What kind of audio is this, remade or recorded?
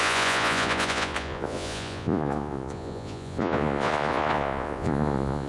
remade